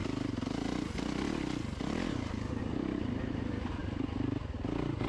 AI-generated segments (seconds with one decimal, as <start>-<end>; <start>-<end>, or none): none